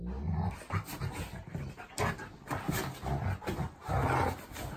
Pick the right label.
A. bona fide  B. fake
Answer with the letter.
A